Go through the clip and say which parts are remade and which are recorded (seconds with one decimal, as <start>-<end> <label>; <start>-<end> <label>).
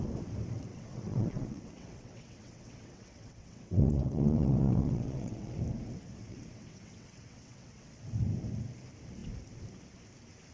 0.0-0.7 recorded; 0.7-5.6 remade; 5.6-6.2 recorded; 6.2-7.9 remade; 7.9-10.5 recorded